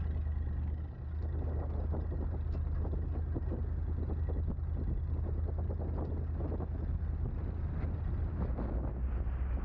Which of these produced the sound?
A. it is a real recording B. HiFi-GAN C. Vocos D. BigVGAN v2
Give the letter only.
A